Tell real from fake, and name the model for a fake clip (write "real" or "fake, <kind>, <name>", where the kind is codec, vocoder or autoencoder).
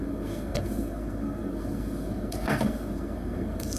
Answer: fake, codec, SNAC